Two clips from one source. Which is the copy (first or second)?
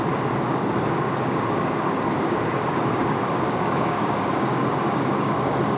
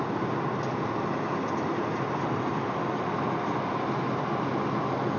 first